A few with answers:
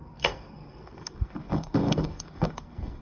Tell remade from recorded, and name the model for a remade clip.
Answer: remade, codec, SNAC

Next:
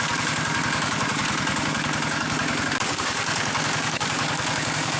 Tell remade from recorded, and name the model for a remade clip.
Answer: remade, codec, DAC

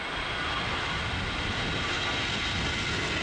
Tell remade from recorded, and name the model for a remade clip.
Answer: recorded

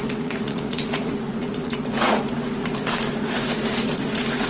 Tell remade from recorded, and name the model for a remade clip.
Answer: remade, vocoder, Vocos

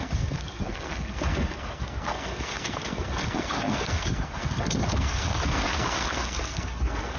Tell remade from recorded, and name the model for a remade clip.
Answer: remade, codec, SNAC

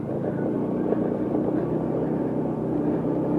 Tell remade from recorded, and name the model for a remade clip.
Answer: recorded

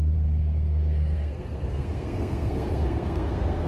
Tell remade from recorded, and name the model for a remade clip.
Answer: remade, codec, SNAC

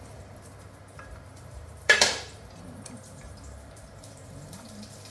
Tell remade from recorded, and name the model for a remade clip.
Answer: remade, vocoder, BigVGAN v2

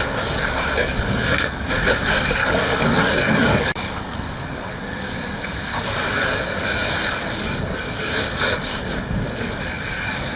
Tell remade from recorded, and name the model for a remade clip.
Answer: remade, codec, DAC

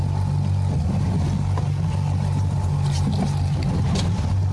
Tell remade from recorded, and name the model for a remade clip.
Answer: recorded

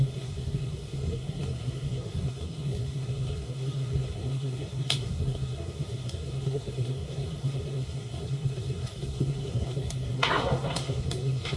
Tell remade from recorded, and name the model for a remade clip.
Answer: remade, codec, SNAC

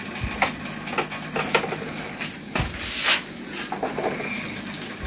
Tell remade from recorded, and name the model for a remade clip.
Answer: recorded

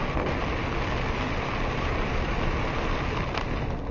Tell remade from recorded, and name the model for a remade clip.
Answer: recorded